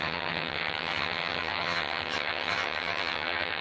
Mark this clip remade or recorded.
remade